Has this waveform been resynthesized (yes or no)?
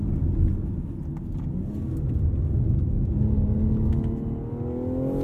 no